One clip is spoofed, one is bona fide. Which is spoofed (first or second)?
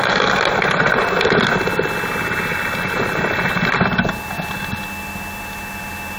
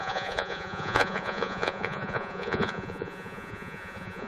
second